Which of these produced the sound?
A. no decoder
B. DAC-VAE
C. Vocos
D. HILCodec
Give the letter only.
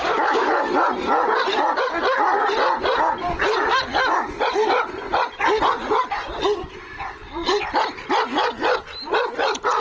A